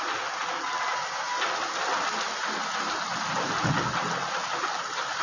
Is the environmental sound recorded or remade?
recorded